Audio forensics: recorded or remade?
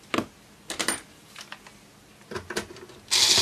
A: recorded